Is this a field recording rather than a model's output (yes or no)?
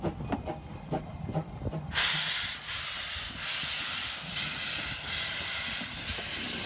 yes